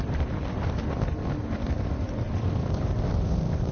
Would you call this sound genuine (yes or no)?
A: yes